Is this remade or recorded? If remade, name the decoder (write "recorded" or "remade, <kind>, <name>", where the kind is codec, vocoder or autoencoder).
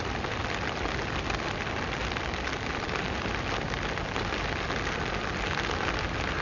recorded